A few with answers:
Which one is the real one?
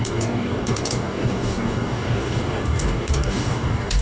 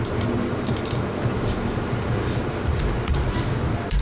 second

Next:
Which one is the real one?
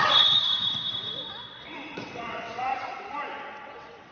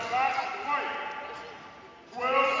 second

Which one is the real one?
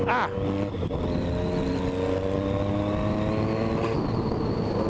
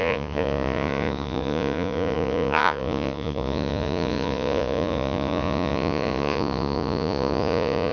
first